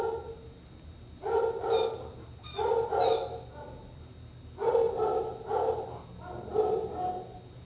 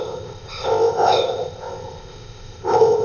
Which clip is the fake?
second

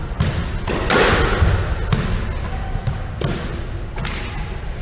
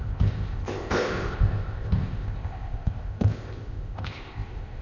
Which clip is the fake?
second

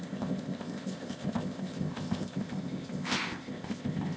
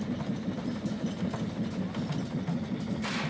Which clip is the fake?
first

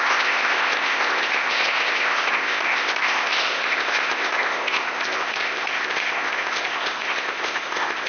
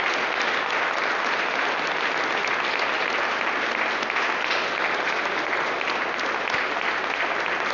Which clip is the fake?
first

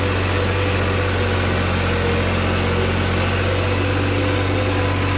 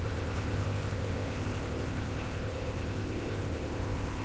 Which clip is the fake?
second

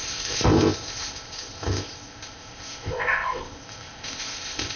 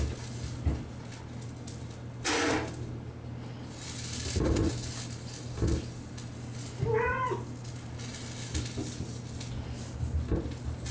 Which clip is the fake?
first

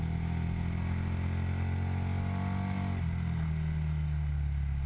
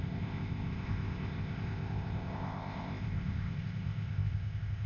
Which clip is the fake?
second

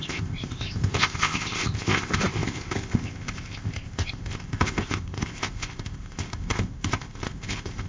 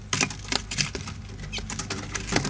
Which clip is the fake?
first